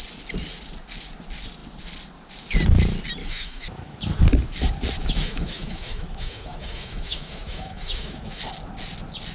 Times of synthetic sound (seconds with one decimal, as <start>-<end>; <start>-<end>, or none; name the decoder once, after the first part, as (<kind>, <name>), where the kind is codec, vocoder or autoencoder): 3.2-4.0 (autoencoder, DAC-VAE); 5.0-8.4